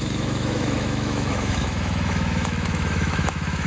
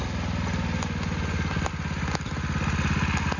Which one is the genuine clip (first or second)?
second